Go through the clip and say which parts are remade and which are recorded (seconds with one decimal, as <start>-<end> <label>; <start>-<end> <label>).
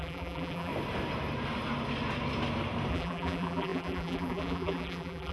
0.0-0.7 remade; 0.7-2.9 recorded; 2.9-5.3 remade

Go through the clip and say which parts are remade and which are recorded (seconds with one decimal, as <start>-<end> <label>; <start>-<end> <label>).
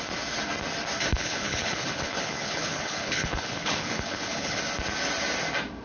0.0-1.1 recorded; 1.1-4.6 remade; 4.6-5.8 recorded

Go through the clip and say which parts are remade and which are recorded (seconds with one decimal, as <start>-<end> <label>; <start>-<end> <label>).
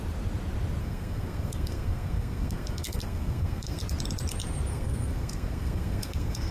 0.0-0.8 recorded; 0.8-3.8 remade; 3.8-4.7 recorded; 4.7-6.5 remade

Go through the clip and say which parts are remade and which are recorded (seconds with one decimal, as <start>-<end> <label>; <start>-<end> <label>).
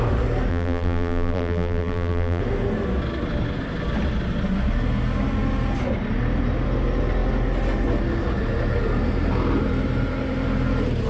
0.0-0.5 recorded; 0.5-2.4 remade; 2.4-11.1 recorded